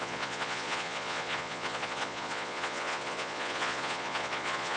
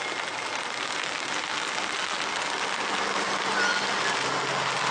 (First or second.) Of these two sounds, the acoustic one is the second